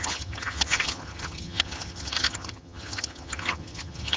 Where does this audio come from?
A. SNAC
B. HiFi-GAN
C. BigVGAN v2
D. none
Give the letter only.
B